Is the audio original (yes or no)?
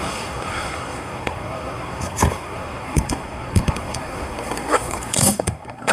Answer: no